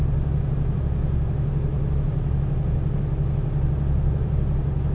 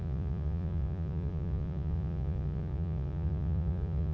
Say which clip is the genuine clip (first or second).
first